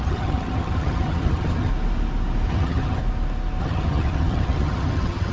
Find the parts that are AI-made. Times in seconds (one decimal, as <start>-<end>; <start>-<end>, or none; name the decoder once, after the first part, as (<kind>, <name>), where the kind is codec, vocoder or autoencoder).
0.0-1.7 (vocoder, HiFi-GAN); 2.5-3.0; 3.6-5.3